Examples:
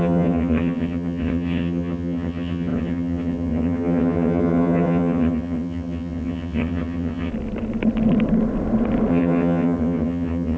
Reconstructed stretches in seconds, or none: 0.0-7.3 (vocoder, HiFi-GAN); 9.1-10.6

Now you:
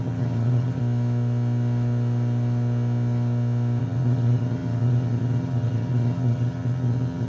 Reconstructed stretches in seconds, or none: 0.0-0.8 (vocoder, HiFi-GAN); 3.8-7.3

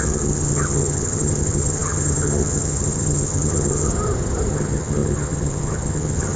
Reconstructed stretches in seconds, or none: 0.0-3.9 (vocoder, HiFi-GAN); 4.5-6.4

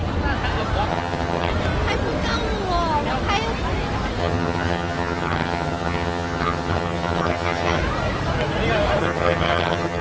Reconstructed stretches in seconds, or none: 0.9-1.5 (vocoder, HiFi-GAN); 4.2-7.8; 9.0-10.0

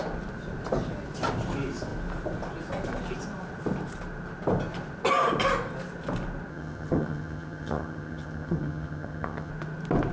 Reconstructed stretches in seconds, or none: 6.5-9.5 (vocoder, HiFi-GAN)

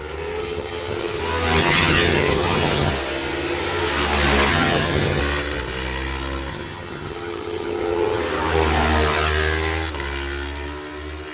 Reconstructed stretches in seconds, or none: 0.4-1.2 (vocoder, HiFi-GAN); 1.6-2.9; 4.5-5.2; 6.5-8.2